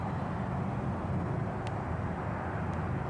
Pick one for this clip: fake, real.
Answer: real